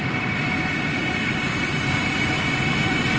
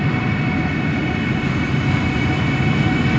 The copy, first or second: first